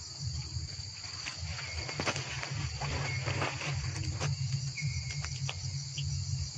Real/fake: real